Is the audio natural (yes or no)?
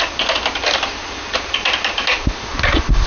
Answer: yes